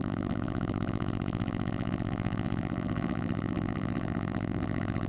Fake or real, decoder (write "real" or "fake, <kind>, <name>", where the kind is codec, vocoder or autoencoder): fake, vocoder, BigVGAN v2